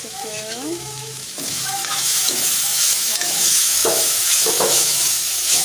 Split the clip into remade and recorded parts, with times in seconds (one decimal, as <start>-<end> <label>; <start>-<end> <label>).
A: 0.0-5.6 remade